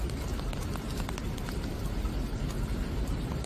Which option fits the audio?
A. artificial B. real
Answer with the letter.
B